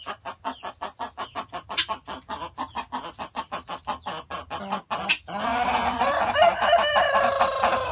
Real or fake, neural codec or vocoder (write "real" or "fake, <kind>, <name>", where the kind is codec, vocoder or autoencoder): real